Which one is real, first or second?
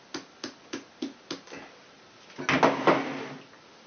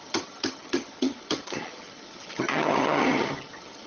first